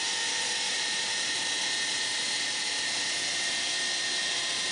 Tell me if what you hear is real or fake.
real